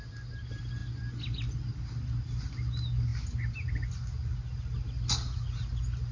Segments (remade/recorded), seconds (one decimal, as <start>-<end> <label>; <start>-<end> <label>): 0.0-6.1 recorded